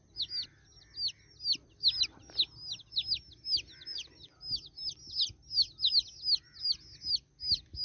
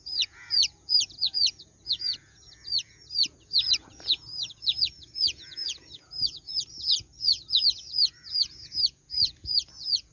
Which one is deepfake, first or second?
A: second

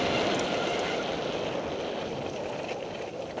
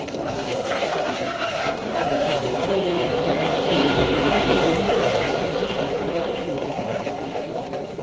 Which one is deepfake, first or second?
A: second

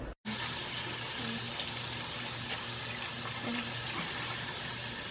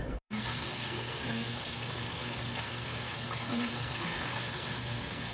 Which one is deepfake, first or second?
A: second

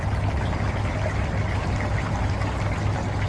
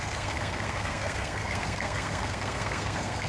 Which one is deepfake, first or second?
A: second